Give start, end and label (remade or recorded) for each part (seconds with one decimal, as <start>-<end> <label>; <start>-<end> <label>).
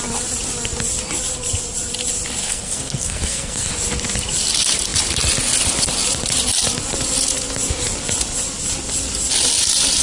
0.0-2.4 recorded; 2.4-3.7 remade; 3.7-10.0 recorded